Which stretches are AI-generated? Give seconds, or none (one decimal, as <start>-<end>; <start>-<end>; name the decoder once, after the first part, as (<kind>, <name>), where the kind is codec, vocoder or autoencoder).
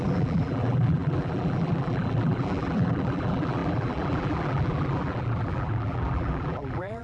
0.0-7.0 (vocoder, BigVGAN v2)